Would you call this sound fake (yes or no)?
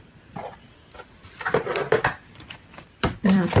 yes